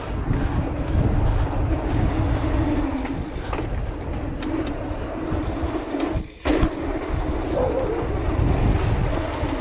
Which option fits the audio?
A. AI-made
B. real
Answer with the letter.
B